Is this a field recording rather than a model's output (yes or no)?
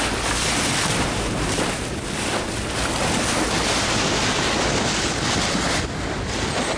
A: yes